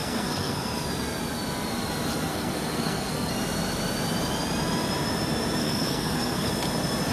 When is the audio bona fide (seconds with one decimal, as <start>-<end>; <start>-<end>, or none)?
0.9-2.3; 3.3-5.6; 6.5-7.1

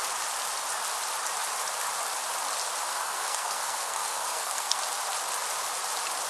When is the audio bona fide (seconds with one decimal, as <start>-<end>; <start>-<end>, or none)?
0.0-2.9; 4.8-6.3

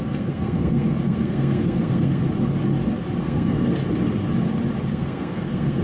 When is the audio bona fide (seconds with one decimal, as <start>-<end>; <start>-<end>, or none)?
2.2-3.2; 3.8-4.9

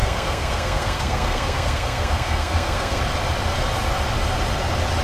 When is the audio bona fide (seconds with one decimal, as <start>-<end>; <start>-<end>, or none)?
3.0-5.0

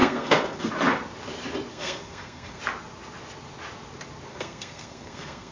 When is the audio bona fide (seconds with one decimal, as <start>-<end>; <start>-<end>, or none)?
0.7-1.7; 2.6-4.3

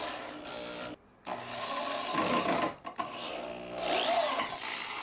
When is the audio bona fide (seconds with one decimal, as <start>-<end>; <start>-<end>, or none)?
0.0-5.0

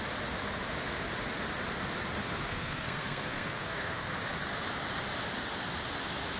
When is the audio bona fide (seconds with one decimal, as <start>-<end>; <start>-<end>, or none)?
0.0-2.2; 4.1-6.4